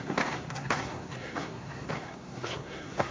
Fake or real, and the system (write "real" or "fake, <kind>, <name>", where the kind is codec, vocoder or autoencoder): fake, codec, SNAC